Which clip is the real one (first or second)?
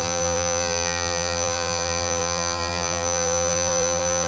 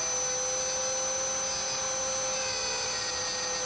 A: second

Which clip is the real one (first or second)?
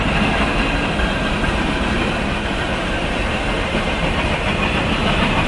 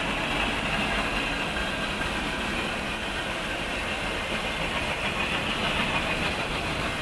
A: second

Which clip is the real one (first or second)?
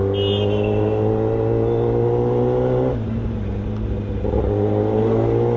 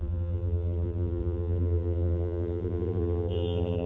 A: first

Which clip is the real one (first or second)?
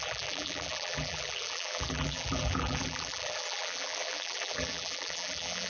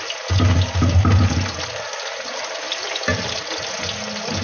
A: second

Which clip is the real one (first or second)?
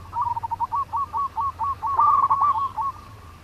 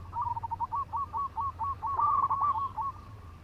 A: first